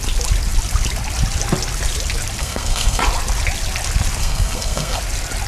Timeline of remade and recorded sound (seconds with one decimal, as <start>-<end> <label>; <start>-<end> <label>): 0.0-2.4 recorded; 2.4-3.0 remade; 3.0-4.2 recorded; 4.2-5.0 remade; 5.0-5.5 recorded